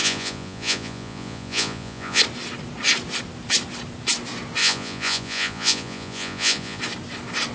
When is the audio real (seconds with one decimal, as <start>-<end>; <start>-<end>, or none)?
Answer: 2.2-4.6; 6.8-7.5